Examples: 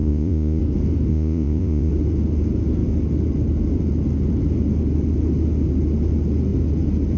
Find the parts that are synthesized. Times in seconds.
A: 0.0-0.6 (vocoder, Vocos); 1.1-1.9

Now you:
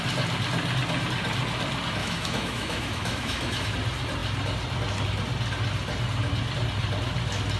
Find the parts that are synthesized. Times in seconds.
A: 2.0-3.7 (autoencoder, DAC-VAE)

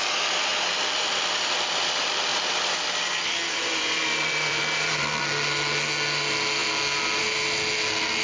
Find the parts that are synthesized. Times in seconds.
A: 0.5-1.8 (vocoder, BigVGAN v2); 2.3-5.2

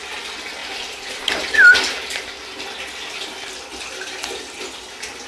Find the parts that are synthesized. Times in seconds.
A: none

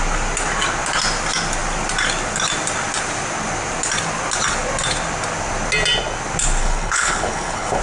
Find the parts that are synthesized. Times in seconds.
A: 6.6-7.8 (codec, HILCodec)